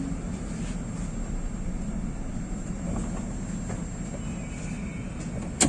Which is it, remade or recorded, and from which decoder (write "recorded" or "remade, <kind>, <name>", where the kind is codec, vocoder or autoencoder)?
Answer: recorded